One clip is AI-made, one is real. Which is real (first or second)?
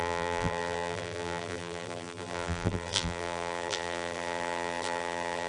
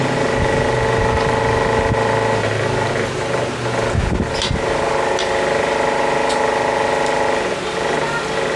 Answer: second